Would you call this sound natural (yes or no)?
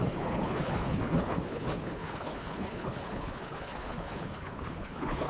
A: no